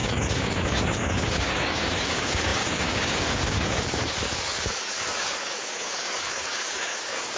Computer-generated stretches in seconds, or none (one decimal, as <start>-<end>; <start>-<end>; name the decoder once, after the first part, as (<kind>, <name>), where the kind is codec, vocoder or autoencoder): 0.0-7.4 (codec, DAC)

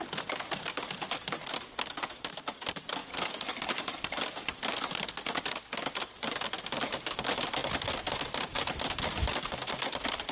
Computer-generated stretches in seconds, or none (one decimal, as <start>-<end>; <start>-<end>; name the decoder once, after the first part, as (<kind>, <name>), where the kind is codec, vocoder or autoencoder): 3.0-4.0 (codec, DAC)